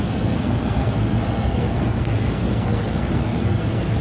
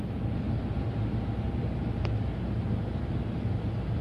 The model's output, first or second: first